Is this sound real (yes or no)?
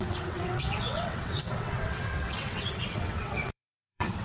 no